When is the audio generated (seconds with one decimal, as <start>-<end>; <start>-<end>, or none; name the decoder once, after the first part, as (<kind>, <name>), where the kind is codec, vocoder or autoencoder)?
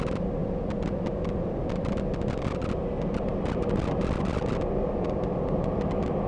none